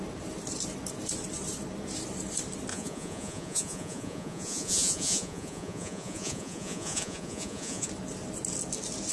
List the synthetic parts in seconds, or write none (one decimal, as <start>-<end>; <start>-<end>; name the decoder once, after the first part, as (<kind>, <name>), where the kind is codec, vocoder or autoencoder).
2.7-7.9 (vocoder, Vocos)